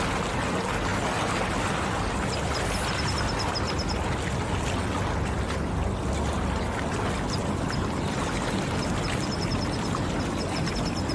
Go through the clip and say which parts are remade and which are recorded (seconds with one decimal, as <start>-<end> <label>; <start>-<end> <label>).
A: 0.0-7.4 recorded; 7.4-8.7 remade; 8.7-11.1 recorded